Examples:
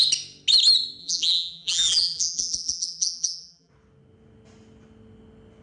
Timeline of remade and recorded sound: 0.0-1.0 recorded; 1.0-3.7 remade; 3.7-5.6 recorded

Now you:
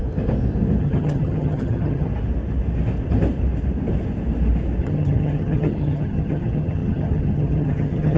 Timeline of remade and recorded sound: 0.0-0.8 recorded; 0.8-2.1 remade; 2.1-4.8 recorded; 4.8-8.2 remade